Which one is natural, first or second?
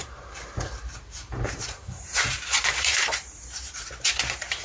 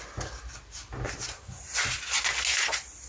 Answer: second